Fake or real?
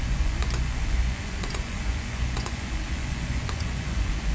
fake